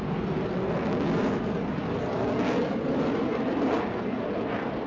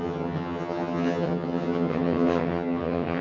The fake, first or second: second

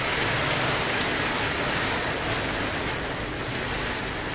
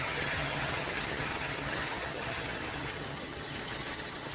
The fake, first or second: second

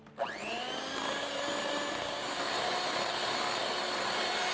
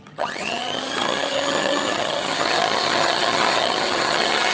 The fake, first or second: second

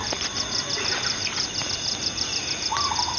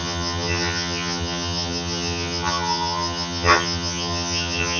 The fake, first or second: second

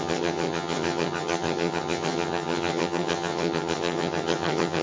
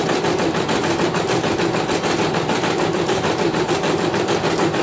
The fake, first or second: first